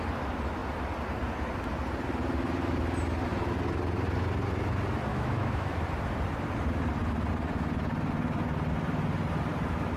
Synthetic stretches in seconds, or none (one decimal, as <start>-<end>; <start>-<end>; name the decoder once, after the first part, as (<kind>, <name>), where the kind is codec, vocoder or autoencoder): 5.1-5.7 (autoencoder, DAC-VAE)